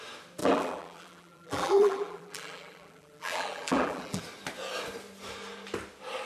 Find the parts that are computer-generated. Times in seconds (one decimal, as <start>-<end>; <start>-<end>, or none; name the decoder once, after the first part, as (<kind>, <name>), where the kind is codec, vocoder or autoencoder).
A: 0.4-4.2 (vocoder, BigVGAN v2)